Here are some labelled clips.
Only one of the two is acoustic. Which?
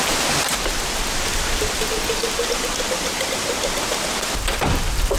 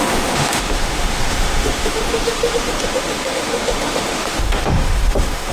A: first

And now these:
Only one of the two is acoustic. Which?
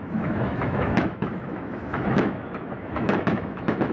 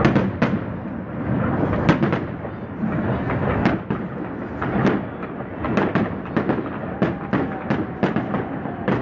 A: second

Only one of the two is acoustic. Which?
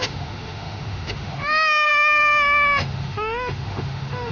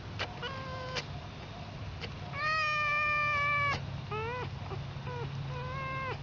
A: second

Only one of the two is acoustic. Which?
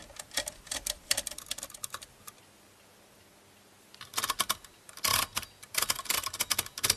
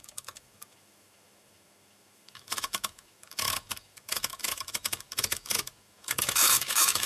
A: first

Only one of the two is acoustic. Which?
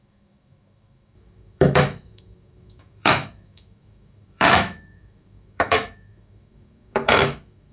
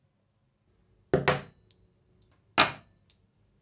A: second